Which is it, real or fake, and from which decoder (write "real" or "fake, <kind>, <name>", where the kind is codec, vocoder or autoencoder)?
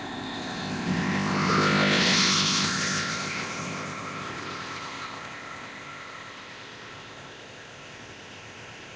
fake, codec, ZipCodec